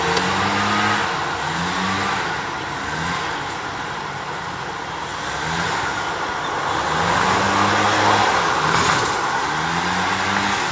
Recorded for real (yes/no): yes